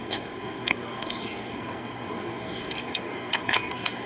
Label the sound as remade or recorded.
remade